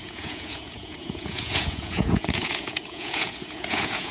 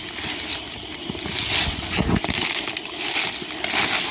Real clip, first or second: second